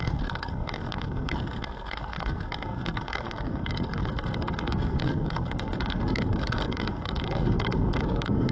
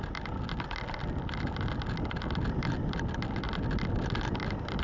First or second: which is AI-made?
first